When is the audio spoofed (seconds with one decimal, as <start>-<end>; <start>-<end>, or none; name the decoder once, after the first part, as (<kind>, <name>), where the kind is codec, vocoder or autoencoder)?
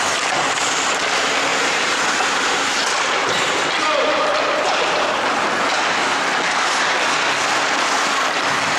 1.5-2.0 (vocoder, BigVGAN v2); 3.2-3.7